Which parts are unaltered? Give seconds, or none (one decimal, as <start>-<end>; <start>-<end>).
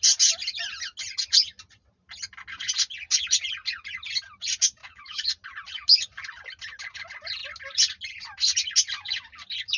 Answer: 0.0-4.8; 5.3-9.8